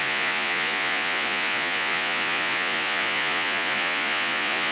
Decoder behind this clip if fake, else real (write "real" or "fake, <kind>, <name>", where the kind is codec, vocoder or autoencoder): fake, vocoder, Vocos